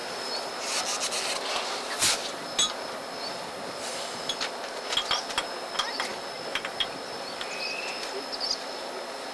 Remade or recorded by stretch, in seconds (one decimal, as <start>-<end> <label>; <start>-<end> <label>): 0.0-9.3 recorded